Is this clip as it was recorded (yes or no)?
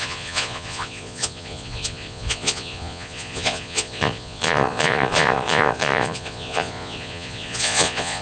no